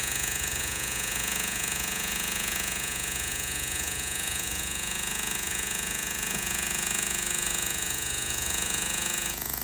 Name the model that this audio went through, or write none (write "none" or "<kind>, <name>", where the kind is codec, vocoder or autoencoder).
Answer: vocoder, Vocos